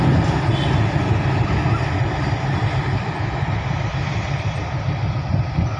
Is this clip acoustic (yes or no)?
yes